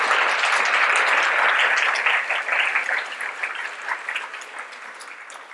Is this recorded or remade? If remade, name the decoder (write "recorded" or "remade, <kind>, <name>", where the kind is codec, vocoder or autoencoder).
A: recorded